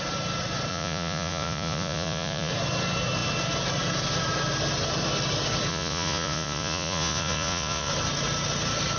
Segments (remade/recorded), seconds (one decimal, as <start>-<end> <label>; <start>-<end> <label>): 0.0-0.7 recorded; 0.7-2.5 remade; 2.5-5.7 recorded; 5.7-7.9 remade; 7.9-9.0 recorded